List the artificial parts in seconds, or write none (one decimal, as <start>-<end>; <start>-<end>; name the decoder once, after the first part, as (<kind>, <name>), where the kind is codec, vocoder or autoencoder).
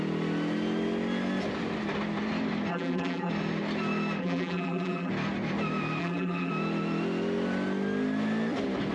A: 2.7-3.3 (vocoder, BigVGAN v2); 4.2-5.1; 6.0-6.5